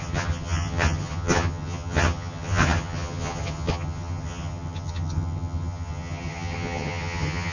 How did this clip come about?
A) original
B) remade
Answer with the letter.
B